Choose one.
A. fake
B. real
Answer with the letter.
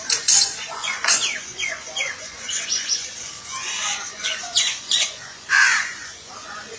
A